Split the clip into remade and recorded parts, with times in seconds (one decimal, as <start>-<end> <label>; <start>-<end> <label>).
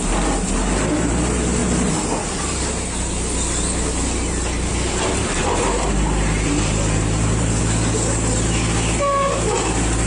0.0-5.4 recorded; 5.4-7.6 remade; 7.6-10.1 recorded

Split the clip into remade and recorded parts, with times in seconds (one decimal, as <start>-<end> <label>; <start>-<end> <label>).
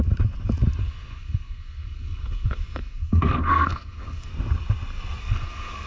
0.0-0.8 recorded; 0.8-4.3 remade; 4.3-5.2 recorded; 5.2-5.9 remade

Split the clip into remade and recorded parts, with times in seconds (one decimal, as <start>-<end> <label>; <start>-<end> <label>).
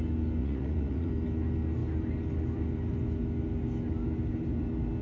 0.0-0.4 recorded; 0.4-1.1 remade; 1.1-5.0 recorded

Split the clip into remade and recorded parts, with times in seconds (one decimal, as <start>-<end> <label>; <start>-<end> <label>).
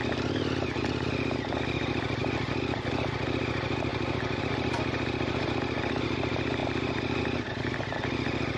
0.0-3.9 recorded; 3.9-4.4 remade; 4.4-8.6 recorded